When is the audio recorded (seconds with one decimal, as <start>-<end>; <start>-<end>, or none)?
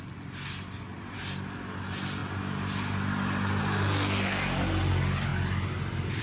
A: 0.0-6.2